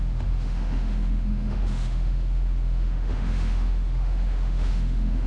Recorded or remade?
remade